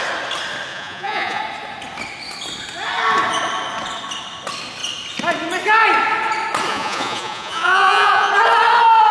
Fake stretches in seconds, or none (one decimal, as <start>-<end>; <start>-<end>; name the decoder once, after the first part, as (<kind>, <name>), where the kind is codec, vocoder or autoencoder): 0.7-1.4 (vocoder, Vocos); 6.7-8.3